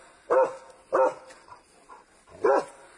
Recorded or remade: recorded